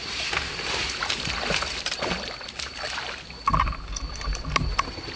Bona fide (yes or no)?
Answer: yes